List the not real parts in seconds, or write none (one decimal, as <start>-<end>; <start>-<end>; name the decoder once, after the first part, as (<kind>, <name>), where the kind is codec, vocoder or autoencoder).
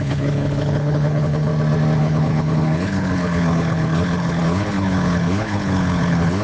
0.0-1.5 (codec, HILCodec); 2.0-6.4